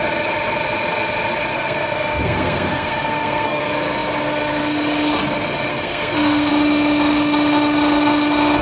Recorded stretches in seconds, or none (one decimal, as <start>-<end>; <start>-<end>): 0.0-1.5; 3.6-5.7; 6.5-8.6